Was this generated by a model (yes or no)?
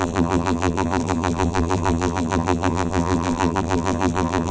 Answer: yes